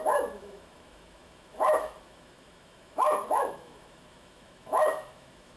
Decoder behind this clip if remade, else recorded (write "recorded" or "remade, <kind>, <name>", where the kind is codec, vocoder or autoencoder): remade, autoencoder, DAC-VAE